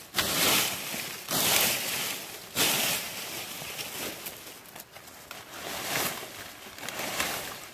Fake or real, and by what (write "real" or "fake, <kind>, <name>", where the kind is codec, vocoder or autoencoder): real